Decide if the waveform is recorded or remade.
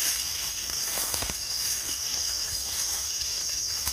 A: remade